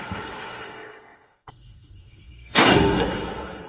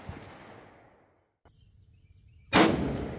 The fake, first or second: first